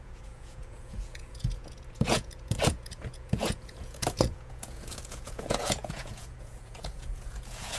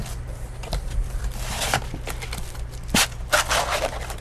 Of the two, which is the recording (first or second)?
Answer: second